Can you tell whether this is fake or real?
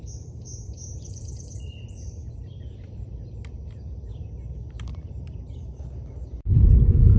fake